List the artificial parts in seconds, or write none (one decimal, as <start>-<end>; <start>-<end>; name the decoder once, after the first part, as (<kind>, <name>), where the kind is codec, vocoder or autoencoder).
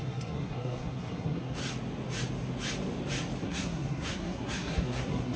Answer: 0.0-1.6 (codec, SNAC); 3.4-5.4